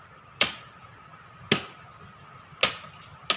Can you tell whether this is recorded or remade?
recorded